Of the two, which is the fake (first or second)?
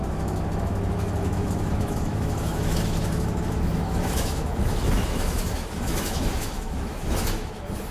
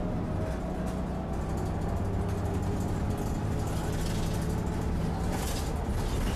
first